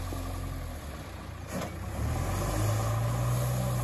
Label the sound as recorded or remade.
recorded